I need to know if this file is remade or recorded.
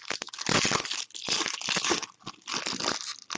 recorded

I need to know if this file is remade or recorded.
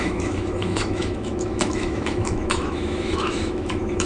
remade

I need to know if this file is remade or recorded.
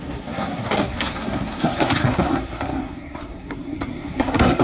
remade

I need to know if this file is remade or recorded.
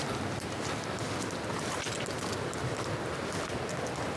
recorded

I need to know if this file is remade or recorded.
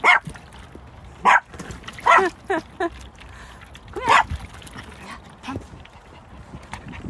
recorded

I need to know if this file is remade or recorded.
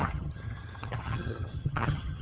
remade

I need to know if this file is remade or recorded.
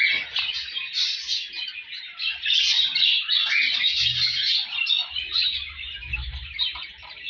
recorded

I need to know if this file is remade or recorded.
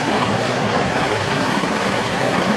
remade